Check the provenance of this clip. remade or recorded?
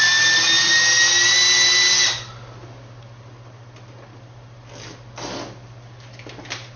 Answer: recorded